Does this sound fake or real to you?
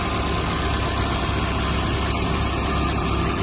real